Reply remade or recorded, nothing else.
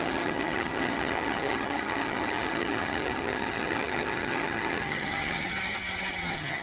remade